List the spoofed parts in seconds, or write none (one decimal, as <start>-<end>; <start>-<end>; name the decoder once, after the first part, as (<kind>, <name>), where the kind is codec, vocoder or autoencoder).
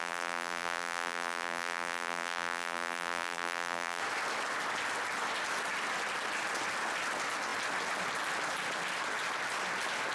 0.0-4.0 (vocoder, BigVGAN v2)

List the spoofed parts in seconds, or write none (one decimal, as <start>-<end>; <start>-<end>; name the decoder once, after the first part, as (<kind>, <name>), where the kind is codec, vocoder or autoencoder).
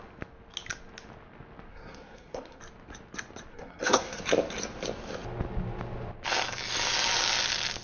1.7-2.6 (codec, SNAC); 3.5-4.2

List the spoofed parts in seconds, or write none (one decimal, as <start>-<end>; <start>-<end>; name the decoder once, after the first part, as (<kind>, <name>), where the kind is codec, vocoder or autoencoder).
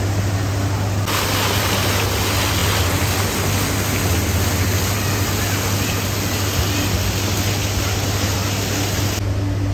none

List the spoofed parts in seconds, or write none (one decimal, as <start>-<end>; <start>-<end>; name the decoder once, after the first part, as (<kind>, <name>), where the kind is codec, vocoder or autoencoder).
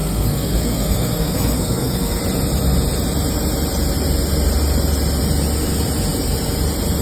0.0-2.2 (codec, SNAC)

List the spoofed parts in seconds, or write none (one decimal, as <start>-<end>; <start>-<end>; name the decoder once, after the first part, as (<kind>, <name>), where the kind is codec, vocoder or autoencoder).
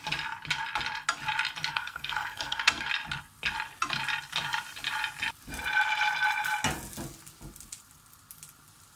1.7-2.9 (codec, SNAC)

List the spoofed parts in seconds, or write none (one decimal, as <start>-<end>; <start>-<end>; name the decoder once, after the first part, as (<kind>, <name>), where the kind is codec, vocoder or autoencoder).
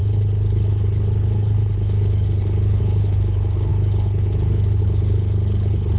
0.0-6.0 (codec, HILCodec)